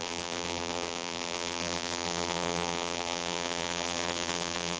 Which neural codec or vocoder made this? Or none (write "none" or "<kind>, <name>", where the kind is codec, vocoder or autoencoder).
vocoder, BigVGAN v2